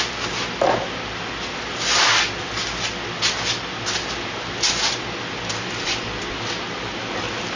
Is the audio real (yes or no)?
yes